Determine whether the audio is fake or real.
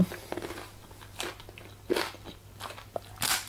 real